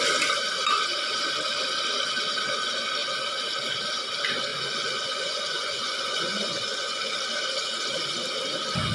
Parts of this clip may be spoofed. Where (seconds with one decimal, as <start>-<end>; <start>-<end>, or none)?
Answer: 4.5-7.1